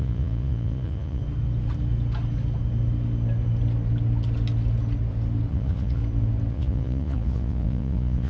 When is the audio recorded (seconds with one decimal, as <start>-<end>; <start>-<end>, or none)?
1.2-5.5; 6.0-6.5